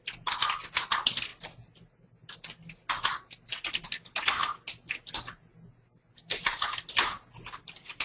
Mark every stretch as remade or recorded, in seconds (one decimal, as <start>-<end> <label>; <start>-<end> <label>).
0.0-8.0 recorded